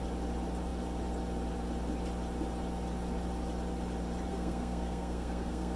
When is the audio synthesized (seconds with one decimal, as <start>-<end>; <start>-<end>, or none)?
4.3-5.8